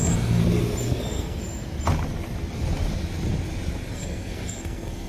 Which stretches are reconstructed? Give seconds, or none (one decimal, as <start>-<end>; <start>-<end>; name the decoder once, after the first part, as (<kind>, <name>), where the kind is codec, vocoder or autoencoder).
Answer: 0.0-0.4 (codec, SNAC); 0.9-1.4; 3.9-5.1